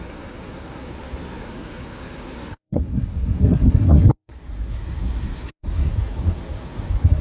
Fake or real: fake